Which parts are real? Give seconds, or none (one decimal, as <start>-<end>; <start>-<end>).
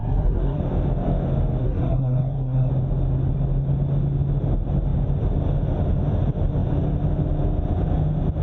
0.6-1.6; 2.7-8.4